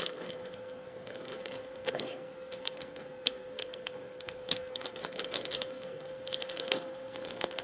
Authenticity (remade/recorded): remade